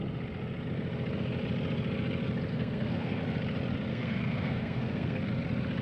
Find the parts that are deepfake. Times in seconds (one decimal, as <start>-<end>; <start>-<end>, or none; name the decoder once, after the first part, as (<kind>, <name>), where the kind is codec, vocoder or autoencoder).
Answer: 2.5-3.2 (codec, SNAC); 3.9-5.3